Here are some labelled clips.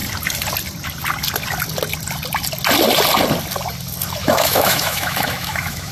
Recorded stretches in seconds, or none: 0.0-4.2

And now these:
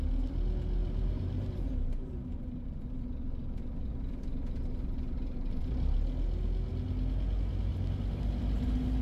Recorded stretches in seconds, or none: 0.0-0.8; 5.5-9.0

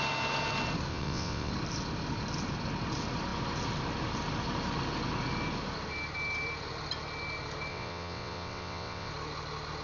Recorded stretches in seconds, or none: 0.0-0.9; 1.5-7.7; 9.1-9.8

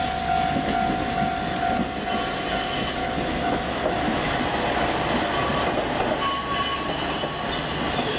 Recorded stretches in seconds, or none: 0.0-3.0; 4.3-8.2